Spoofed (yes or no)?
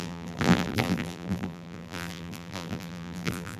yes